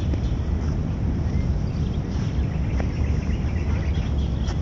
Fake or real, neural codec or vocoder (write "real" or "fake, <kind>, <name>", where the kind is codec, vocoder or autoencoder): real